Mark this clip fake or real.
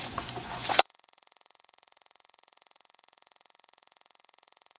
fake